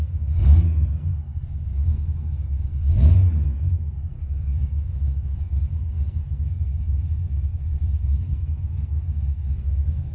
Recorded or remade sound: remade